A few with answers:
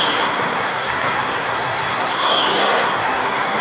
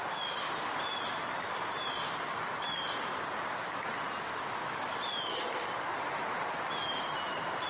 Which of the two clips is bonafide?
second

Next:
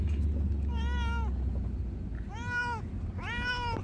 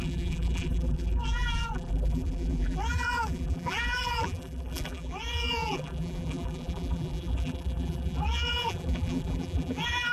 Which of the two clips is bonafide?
first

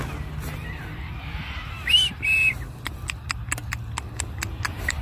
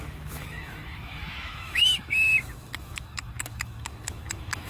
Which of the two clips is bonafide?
first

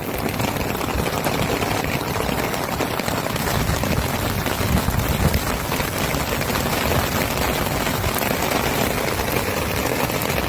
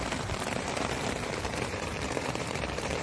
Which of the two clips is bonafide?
first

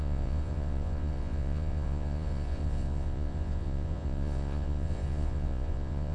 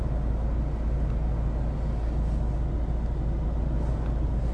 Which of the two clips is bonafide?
second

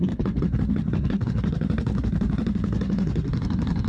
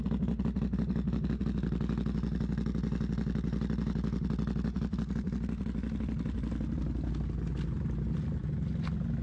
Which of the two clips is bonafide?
second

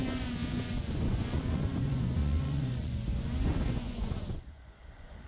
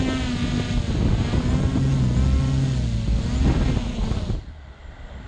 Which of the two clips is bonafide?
second